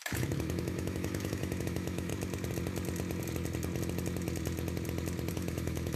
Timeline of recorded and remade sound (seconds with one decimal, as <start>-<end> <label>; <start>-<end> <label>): 0.0-2.1 remade; 2.1-5.3 recorded; 5.3-6.0 remade